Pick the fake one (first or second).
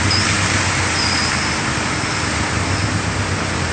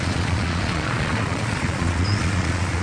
second